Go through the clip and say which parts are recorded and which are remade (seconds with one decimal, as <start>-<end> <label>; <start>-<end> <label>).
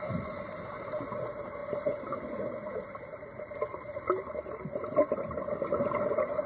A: 0.0-6.5 recorded